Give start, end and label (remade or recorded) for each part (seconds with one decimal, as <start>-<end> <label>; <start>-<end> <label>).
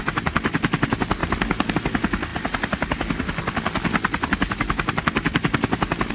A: 0.0-6.1 recorded